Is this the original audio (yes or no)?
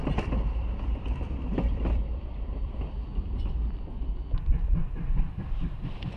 no